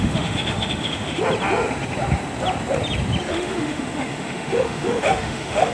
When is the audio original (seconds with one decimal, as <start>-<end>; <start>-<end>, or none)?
1.2-3.3